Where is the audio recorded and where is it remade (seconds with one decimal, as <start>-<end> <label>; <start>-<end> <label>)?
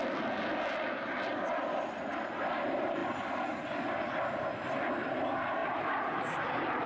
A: 0.0-1.3 recorded; 1.3-1.9 remade; 1.9-5.6 recorded; 5.6-6.1 remade; 6.1-6.9 recorded